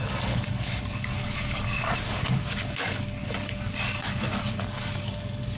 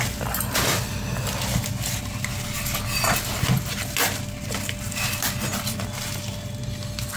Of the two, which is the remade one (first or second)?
first